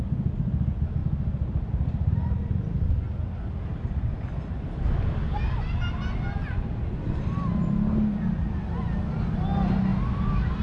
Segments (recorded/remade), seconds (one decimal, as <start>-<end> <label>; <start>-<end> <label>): 0.0-1.0 recorded; 1.0-1.7 remade; 1.7-10.6 recorded